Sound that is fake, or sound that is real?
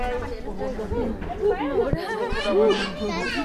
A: real